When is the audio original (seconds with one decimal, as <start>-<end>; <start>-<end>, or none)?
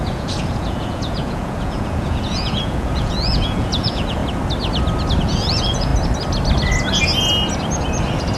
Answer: 4.2-5.2; 5.9-8.4